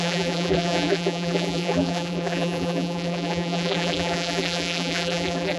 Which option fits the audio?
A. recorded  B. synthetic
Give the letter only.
B